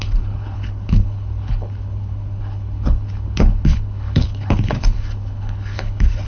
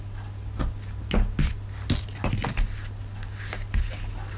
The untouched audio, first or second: second